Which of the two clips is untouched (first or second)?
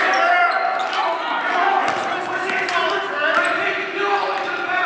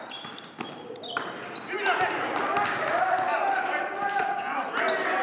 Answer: second